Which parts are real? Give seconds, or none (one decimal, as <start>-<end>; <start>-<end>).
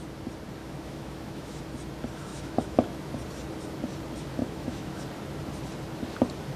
0.0-0.6; 1.6-2.3; 3.1-4.4; 5.0-6.6